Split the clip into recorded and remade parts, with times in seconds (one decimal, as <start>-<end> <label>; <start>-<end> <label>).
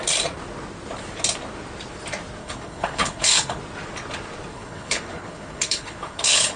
0.0-2.4 recorded; 2.4-3.6 remade; 3.6-4.5 recorded; 4.5-6.6 remade